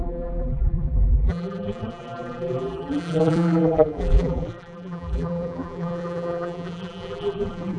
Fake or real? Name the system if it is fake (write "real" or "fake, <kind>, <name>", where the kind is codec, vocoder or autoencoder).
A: fake, vocoder, BigVGAN v2